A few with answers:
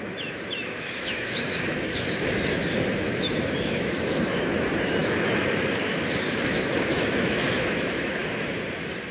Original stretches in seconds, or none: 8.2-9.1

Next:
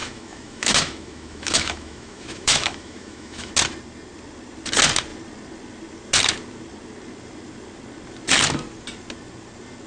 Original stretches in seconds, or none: 3.5-9.9

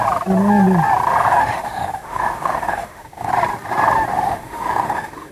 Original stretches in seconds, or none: 0.0-1.4; 3.3-4.1

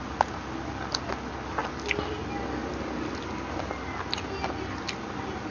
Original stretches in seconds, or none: 0.0-5.5

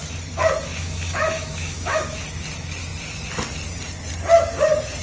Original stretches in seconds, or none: 0.0-0.7; 2.2-5.0

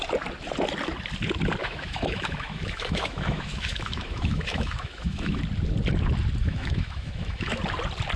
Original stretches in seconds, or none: 0.0-1.6; 5.4-6.4; 7.6-8.2

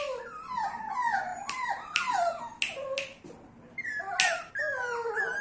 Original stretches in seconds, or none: 0.0-5.4

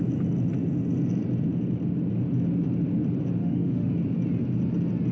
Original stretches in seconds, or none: 0.0-3.4; 3.9-5.1